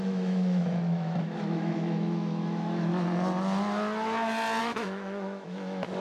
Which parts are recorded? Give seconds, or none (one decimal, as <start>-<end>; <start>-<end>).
2.9-4.6